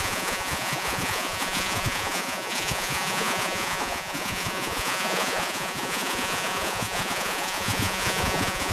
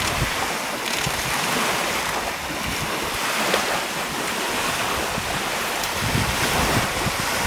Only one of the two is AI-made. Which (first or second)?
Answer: first